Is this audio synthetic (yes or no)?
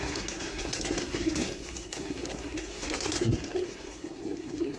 yes